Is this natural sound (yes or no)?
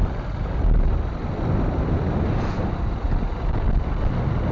yes